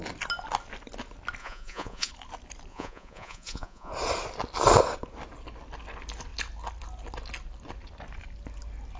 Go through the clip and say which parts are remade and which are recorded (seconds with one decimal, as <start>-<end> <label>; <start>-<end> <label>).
0.0-1.4 recorded; 1.4-2.1 remade; 2.1-2.7 recorded; 2.7-3.9 remade; 3.9-9.0 recorded